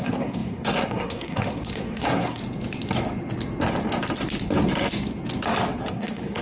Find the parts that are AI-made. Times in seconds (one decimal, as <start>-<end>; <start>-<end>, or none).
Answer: 0.0-2.4; 5.9-6.4